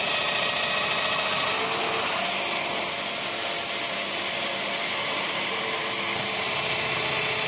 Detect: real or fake real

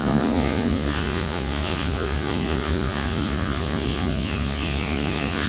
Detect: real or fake fake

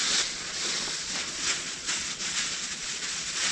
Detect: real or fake fake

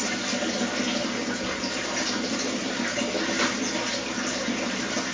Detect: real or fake real